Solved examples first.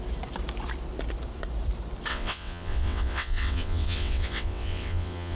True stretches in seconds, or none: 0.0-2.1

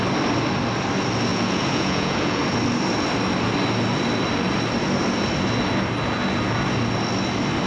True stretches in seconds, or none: 0.0-1.3; 2.4-7.7

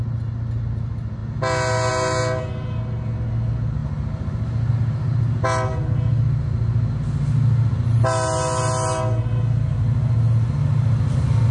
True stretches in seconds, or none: 0.0-11.5

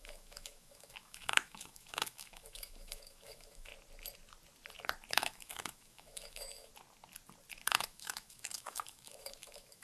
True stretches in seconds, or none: 3.7-5.1; 6.7-7.7

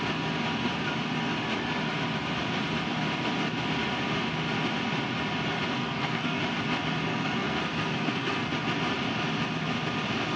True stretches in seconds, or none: 0.0-5.8; 6.4-7.1; 8.5-10.4